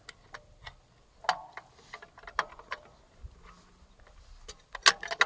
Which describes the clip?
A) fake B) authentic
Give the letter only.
B